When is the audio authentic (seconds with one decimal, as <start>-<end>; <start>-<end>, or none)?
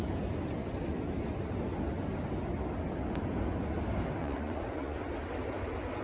0.0-4.2; 5.1-6.0